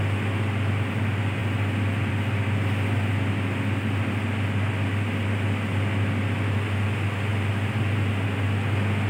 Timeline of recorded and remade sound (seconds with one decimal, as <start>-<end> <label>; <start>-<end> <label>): 0.0-9.1 recorded